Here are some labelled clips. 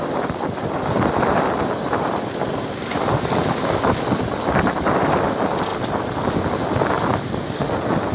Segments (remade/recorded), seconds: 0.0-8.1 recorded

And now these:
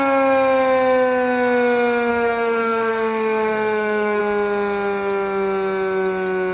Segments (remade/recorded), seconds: 0.0-2.1 recorded; 2.1-4.2 remade; 4.2-6.5 recorded

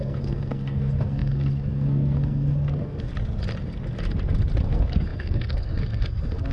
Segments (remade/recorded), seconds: 0.0-3.1 remade; 3.1-4.6 recorded; 4.6-6.5 remade

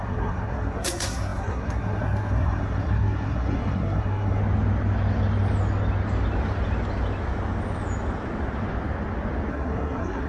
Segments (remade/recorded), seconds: 0.0-4.4 remade; 4.4-9.5 recorded; 9.5-10.3 remade

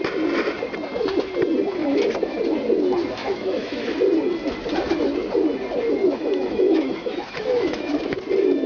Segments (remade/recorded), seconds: 0.0-3.2 recorded; 3.2-3.9 remade; 3.9-6.0 recorded; 6.0-8.0 remade; 8.0-8.7 recorded